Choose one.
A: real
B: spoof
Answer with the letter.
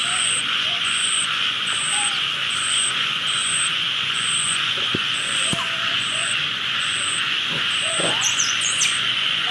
B